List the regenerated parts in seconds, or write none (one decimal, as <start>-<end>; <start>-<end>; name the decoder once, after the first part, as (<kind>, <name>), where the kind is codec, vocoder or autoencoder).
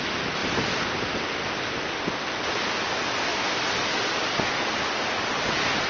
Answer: 0.0-0.4 (vocoder, BigVGAN v2); 2.2-3.3; 5.3-5.9